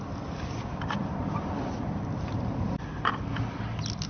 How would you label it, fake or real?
real